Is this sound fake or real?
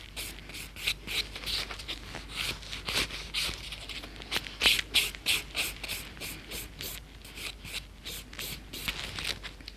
real